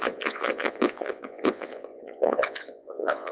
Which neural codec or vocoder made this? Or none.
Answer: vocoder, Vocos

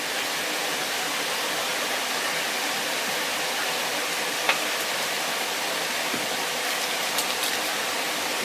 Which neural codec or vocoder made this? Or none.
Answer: none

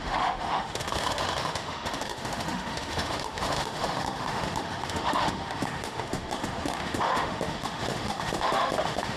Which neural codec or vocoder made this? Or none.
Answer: autoencoder, DAC-VAE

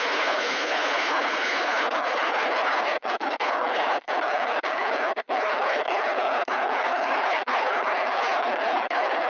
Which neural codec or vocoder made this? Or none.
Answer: codec, HILCodec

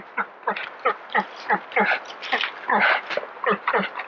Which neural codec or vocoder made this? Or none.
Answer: none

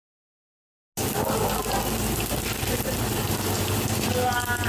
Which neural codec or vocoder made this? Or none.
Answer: none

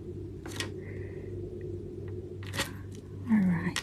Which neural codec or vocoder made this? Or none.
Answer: none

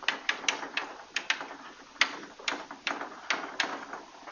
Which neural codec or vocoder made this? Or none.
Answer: none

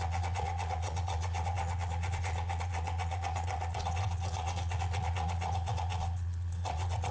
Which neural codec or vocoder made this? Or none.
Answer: vocoder, Vocos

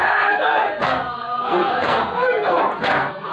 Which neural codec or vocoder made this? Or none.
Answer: codec, SNAC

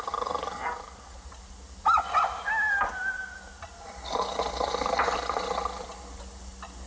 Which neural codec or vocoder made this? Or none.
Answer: none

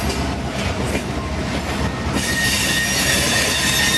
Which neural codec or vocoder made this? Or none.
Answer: none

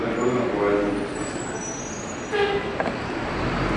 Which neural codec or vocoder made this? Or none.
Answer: none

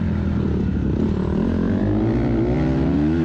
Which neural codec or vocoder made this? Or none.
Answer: none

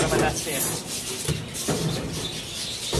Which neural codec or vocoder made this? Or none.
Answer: none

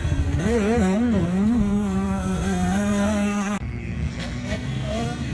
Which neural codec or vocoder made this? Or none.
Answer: codec, SNAC